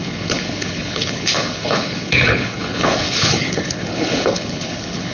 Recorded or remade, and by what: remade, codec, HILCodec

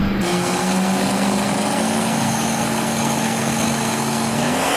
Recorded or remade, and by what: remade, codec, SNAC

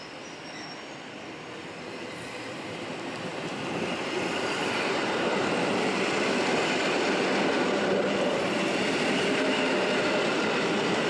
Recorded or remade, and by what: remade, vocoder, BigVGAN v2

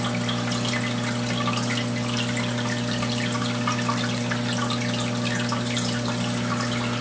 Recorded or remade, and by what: recorded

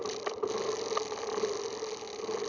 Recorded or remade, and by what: recorded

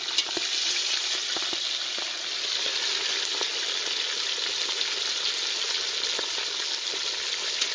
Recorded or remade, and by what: recorded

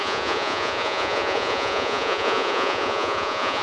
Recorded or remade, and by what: remade, vocoder, Vocos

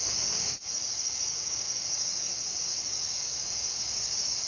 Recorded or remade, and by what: remade, codec, DAC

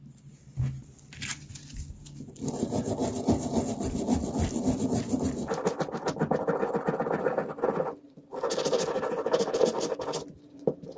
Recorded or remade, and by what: recorded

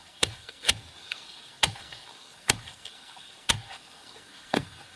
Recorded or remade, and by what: remade, codec, SNAC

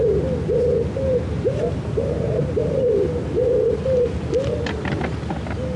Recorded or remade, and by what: recorded